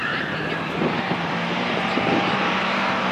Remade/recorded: remade